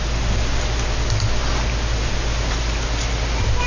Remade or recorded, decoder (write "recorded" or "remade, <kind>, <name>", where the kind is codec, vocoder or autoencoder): recorded